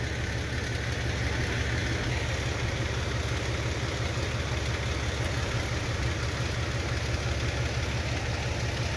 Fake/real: real